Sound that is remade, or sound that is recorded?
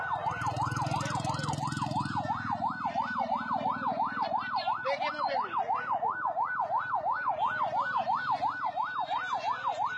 recorded